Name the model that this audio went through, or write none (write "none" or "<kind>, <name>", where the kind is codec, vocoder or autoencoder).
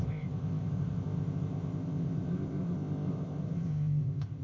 codec, ZipCodec